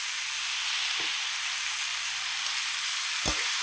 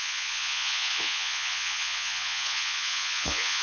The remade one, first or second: second